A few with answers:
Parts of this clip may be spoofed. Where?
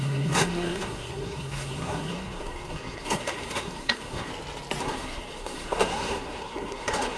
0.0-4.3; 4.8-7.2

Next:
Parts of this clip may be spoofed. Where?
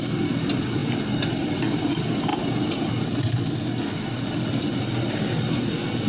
2.3-2.9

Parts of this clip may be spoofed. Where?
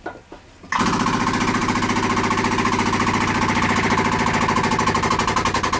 none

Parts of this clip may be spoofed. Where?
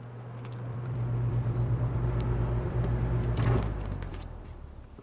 0.7-3.6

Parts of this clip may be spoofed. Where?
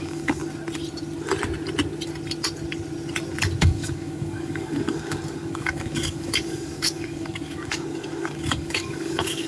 0.0-0.4; 3.6-9.5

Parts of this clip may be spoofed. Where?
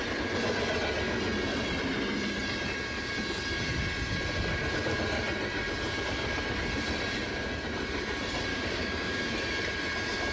8.5-9.2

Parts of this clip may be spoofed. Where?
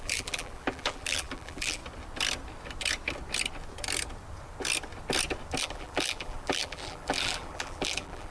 0.0-1.8; 5.6-8.3